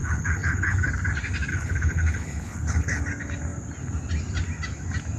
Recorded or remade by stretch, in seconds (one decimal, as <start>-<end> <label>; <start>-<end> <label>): 0.0-0.9 remade; 0.9-1.5 recorded; 1.5-3.0 remade; 3.0-5.2 recorded